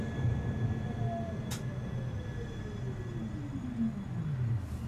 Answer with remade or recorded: recorded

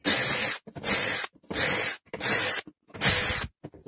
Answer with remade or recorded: recorded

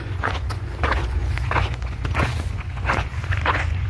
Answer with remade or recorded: remade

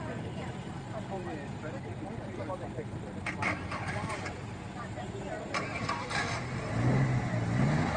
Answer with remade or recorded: recorded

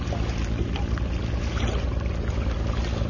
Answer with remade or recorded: recorded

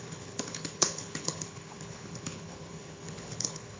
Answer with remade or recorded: remade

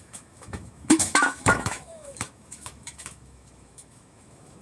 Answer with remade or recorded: remade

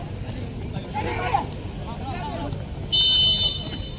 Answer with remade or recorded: recorded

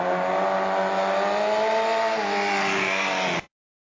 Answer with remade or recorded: recorded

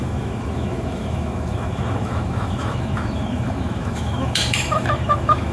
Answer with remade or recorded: remade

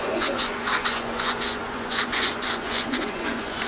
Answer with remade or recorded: remade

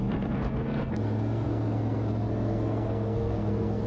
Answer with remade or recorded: remade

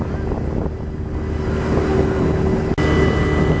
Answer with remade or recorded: recorded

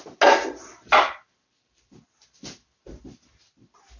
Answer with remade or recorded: recorded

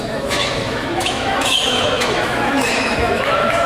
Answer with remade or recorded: remade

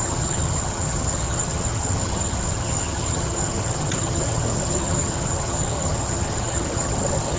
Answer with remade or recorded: remade